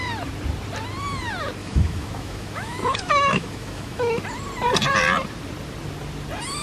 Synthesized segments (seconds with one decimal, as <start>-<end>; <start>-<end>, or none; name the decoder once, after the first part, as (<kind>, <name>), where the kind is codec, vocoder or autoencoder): 1.6-4.2 (autoencoder, DAC-VAE)